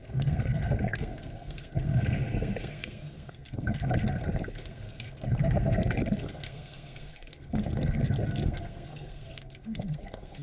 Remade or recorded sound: remade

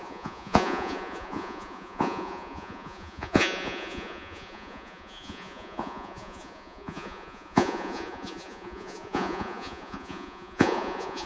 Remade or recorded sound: remade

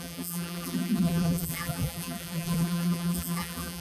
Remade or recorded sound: remade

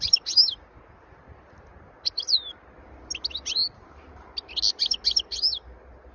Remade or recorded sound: recorded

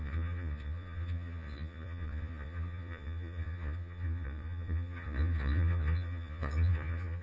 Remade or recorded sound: remade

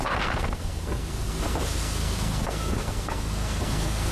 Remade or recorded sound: remade